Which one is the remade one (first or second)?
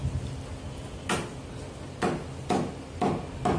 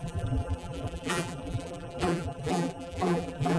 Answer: second